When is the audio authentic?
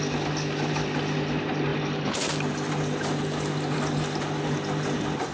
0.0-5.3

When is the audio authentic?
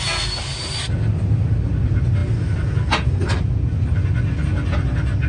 0.0-5.3